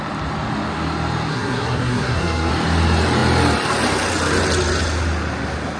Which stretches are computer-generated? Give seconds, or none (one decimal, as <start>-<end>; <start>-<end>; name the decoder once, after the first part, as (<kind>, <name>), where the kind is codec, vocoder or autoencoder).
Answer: 1.3-2.5 (codec, SNAC)